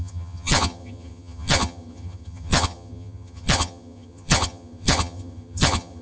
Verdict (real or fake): fake